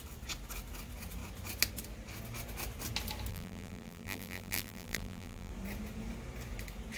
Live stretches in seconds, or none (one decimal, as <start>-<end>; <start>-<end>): 0.0-3.3; 5.5-7.0